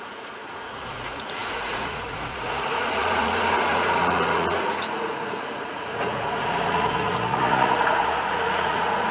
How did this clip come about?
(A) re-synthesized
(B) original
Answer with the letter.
A